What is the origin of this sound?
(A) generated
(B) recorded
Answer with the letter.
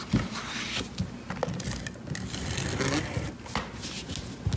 B